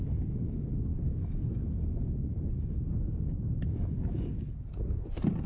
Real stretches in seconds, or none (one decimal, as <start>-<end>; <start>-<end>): 0.0-5.5